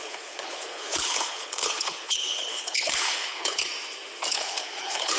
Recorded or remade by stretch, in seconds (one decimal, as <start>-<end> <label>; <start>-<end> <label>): 0.0-3.7 remade; 3.7-4.3 recorded; 4.3-5.2 remade